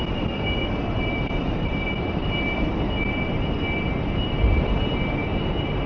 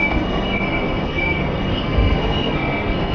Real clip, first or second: first